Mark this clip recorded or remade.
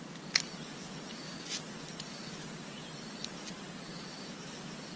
recorded